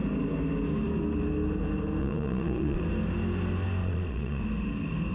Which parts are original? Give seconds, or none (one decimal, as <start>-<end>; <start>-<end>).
0.0-2.0; 2.8-3.8; 4.4-5.1